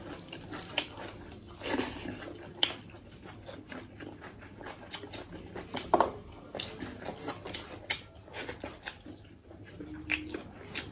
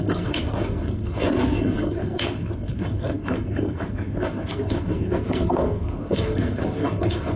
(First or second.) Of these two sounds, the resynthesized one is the second